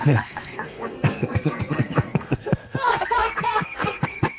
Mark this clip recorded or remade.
remade